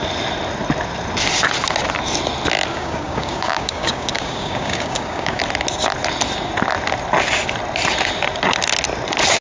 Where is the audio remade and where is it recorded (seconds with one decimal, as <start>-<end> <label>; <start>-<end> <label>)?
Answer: 0.0-2.7 recorded; 2.7-5.4 remade; 5.4-9.4 recorded